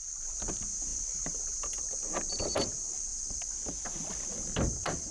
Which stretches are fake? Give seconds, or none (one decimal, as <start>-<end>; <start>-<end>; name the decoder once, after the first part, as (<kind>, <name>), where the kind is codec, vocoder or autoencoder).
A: 0.9-1.8 (vocoder, BigVGAN v2)